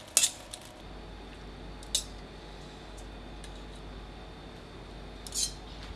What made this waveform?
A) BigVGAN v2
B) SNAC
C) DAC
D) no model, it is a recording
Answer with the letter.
D